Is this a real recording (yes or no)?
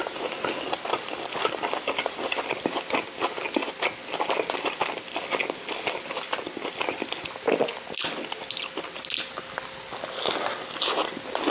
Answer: yes